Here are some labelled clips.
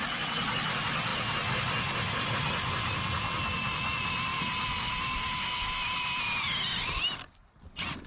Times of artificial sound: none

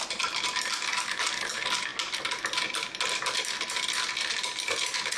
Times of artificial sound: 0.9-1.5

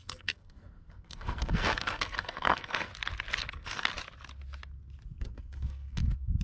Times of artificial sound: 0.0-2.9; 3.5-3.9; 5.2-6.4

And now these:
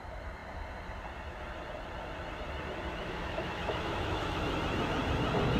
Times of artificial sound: 2.9-4.4

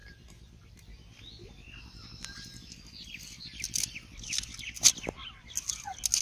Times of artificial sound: 1.5-2.5; 3.4-5.2

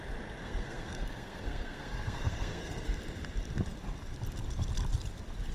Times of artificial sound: 0.4-3.0